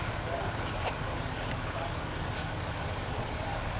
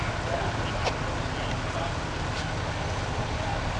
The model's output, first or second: first